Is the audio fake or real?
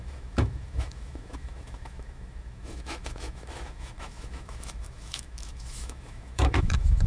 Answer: fake